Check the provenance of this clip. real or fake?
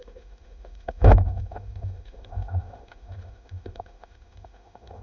fake